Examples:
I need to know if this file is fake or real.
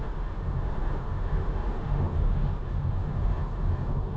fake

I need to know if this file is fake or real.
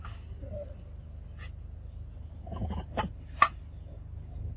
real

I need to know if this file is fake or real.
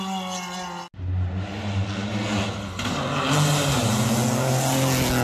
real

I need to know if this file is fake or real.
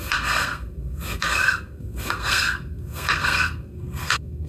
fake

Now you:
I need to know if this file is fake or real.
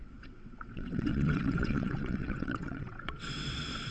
fake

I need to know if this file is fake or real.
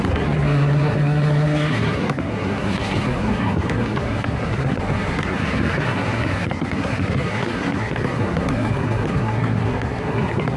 fake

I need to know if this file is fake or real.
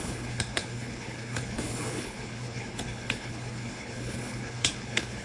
fake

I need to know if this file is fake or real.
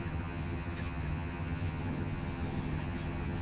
fake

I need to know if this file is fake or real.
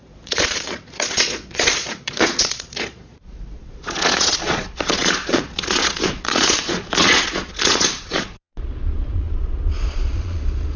fake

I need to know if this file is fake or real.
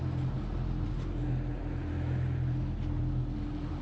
real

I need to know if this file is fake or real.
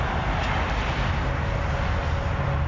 real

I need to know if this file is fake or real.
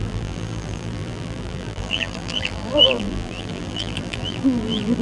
fake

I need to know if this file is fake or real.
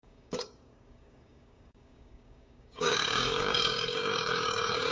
fake